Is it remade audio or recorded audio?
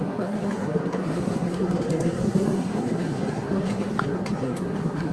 remade